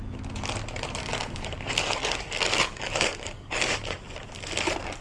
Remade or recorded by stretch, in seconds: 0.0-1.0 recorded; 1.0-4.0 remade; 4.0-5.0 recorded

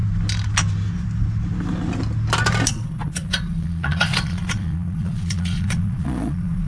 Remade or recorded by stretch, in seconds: 0.0-2.7 recorded; 2.7-6.7 remade